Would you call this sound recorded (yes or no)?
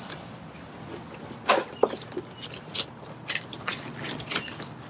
yes